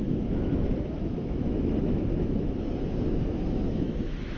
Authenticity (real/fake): fake